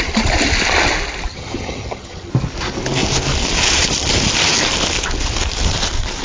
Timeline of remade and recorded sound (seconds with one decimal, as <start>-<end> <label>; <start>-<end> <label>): 0.0-1.3 recorded; 1.3-2.3 remade; 2.3-6.2 recorded